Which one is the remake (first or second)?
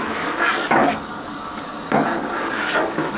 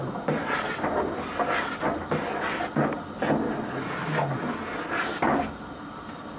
first